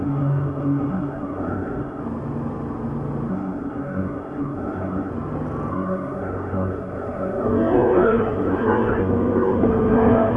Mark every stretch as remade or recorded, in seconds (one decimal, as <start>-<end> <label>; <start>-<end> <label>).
0.0-2.0 remade; 2.0-3.3 recorded; 3.3-5.1 remade; 5.1-5.7 recorded; 5.7-10.4 remade